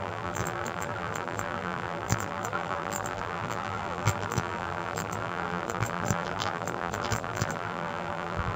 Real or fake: fake